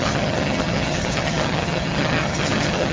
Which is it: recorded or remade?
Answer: remade